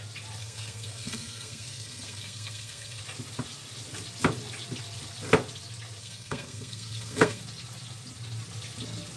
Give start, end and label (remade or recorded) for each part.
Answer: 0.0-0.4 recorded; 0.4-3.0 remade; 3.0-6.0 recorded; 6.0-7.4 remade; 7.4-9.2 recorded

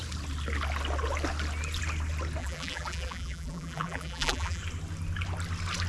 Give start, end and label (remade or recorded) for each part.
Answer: 0.0-2.4 recorded; 2.4-4.6 remade; 4.6-5.9 recorded

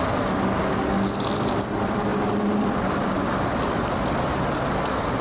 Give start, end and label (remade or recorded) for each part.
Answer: 0.0-5.2 recorded

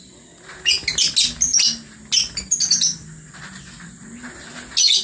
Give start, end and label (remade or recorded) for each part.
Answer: 0.0-5.0 recorded

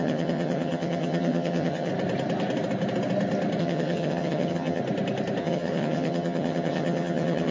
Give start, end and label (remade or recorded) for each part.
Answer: 0.0-1.9 remade; 1.9-3.6 recorded; 3.6-4.8 remade; 4.8-5.4 recorded; 5.4-7.5 remade

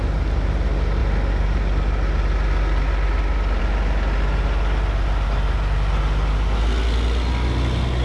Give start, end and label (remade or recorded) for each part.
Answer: 0.0-8.0 recorded

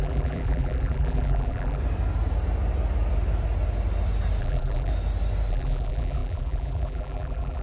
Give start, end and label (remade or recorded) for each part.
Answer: 0.0-1.8 remade; 1.8-4.4 recorded; 4.4-4.9 remade; 4.9-5.5 recorded; 5.5-7.6 remade

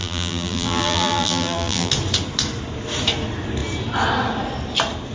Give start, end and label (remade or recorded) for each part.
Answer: 0.0-1.9 remade; 1.9-5.1 recorded